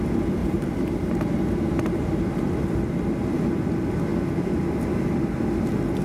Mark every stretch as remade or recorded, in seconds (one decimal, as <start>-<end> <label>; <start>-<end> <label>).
0.0-0.4 recorded; 0.4-2.5 remade; 2.5-6.0 recorded